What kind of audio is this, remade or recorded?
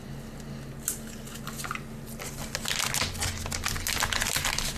recorded